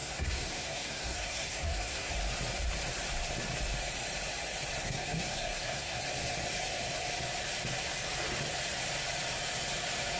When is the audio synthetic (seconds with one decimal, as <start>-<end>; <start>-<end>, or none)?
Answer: 0.0-2.1; 4.8-6.0